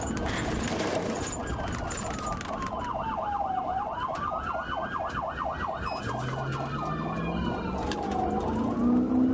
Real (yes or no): yes